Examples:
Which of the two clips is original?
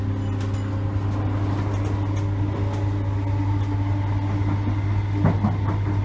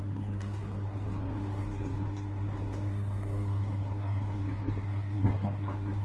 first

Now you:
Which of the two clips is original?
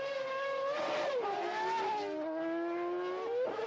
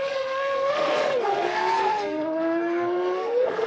first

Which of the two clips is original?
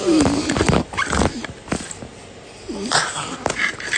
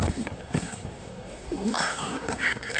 first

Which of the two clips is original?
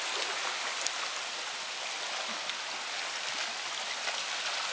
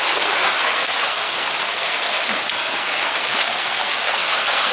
first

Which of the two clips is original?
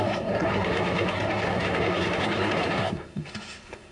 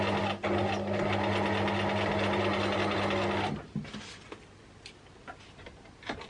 second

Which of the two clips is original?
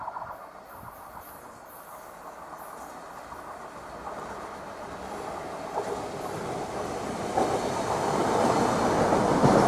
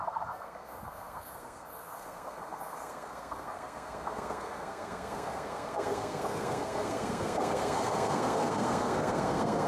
first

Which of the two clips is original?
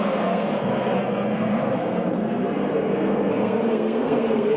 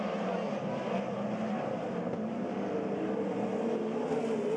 second